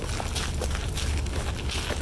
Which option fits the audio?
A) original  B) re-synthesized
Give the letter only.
A